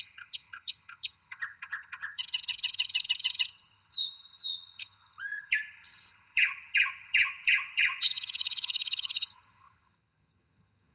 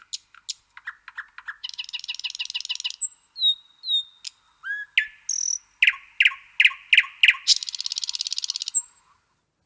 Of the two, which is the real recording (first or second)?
second